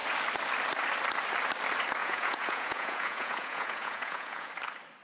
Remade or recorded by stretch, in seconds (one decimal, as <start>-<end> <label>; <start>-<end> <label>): 0.0-2.0 recorded; 2.0-4.5 remade; 4.5-5.0 recorded